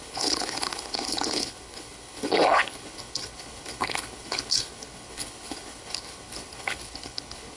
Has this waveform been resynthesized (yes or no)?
yes